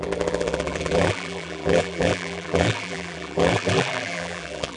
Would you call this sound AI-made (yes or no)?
yes